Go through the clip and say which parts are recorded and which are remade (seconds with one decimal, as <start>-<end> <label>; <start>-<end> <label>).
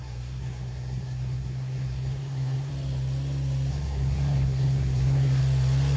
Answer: 0.0-2.7 remade; 2.7-3.7 recorded; 3.7-5.4 remade; 5.4-6.0 recorded